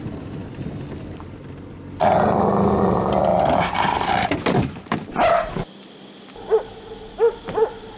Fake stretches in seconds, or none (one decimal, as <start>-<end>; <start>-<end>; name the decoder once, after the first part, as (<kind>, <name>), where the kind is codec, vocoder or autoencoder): 3.3-5.5 (vocoder, BigVGAN v2)